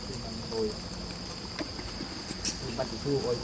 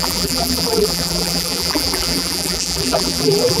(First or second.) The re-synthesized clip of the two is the second